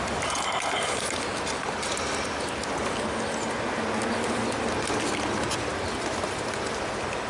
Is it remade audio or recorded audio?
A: recorded